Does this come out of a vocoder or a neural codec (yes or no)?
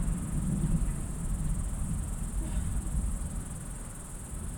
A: no